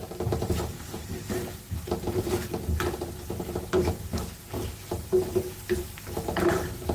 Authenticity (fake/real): fake